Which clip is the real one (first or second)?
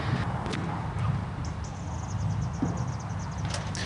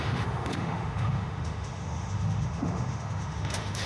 first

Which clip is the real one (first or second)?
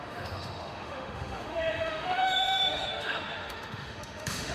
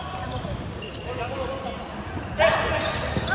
second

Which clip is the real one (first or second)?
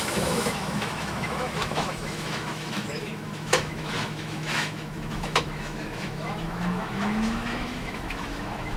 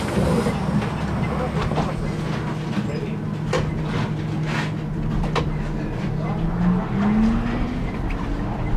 second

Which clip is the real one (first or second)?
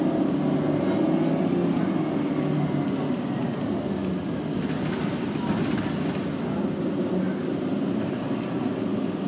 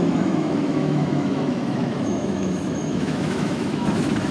first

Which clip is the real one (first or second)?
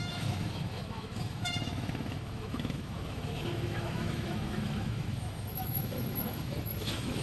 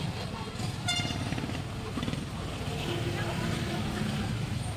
second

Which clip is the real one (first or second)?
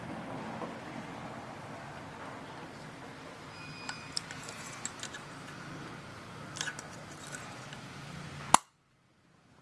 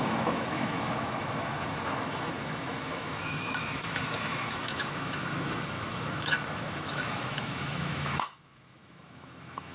first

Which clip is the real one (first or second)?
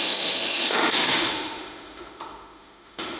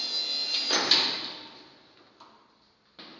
second